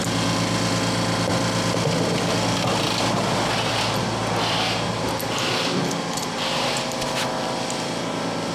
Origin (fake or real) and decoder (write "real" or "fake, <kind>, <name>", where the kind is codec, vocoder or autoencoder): real